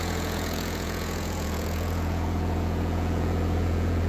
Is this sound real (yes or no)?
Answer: no